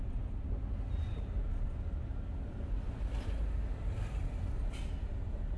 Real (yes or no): yes